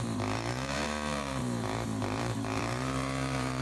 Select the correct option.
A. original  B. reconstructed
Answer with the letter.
B